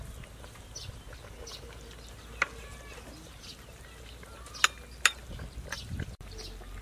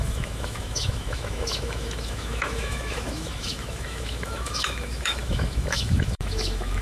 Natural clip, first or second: first